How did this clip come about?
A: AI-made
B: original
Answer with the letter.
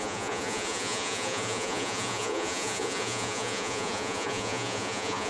A